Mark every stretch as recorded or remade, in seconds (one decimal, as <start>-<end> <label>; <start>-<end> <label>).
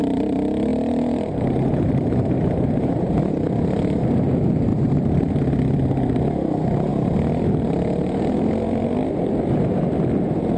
0.0-0.7 recorded; 0.7-3.2 remade; 3.2-4.7 recorded; 4.7-5.3 remade; 5.3-10.6 recorded